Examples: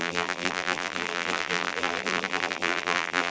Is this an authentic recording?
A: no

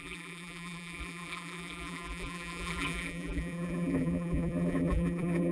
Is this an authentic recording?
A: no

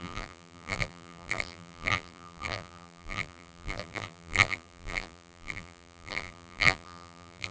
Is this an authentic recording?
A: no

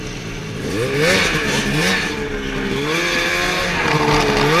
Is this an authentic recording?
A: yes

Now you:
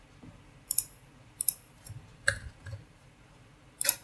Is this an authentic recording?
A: no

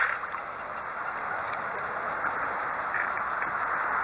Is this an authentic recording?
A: no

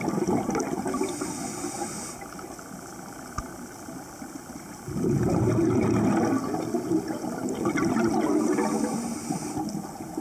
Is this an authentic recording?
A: yes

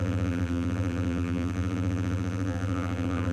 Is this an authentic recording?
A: no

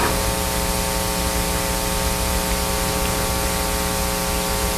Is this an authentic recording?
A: yes